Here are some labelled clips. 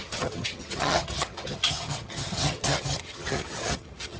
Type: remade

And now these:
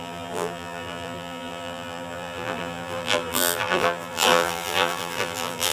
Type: remade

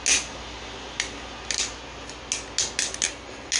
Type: recorded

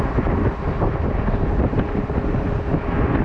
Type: recorded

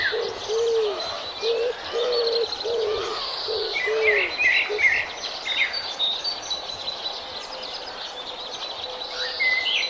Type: recorded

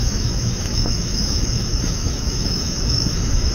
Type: remade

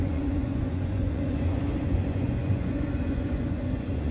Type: remade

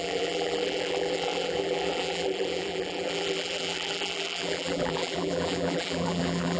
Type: remade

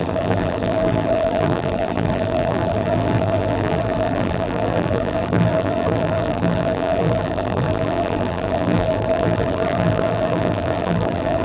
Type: remade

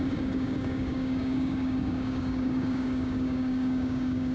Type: remade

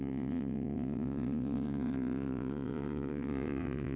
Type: remade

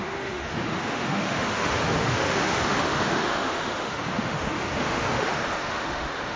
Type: remade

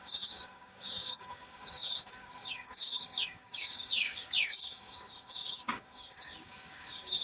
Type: remade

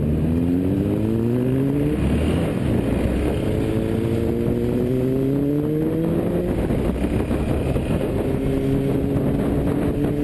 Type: recorded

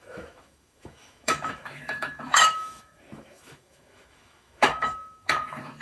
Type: remade